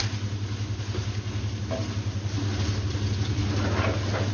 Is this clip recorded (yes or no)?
yes